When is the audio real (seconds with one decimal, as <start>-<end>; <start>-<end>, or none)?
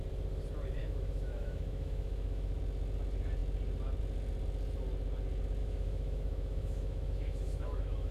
0.0-0.8; 2.6-5.6